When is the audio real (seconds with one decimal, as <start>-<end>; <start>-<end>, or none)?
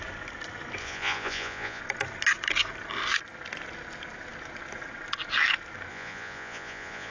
0.0-0.8; 1.8-5.9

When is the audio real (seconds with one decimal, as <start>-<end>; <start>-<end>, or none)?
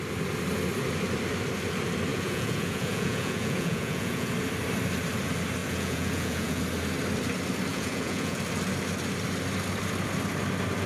0.0-2.1; 4.3-5.6; 6.6-7.7; 8.4-10.9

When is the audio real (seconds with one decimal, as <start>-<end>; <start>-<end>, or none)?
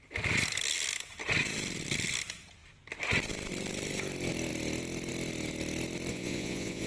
0.0-6.1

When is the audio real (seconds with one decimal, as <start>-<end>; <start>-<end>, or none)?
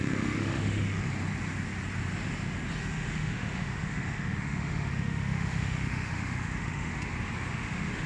1.0-2.8; 6.9-7.5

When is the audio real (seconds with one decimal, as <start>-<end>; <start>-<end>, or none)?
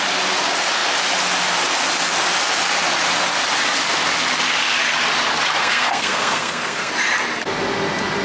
0.0-5.6; 6.9-8.2